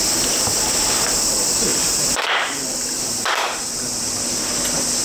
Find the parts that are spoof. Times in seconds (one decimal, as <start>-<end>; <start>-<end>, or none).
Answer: 1.7-4.2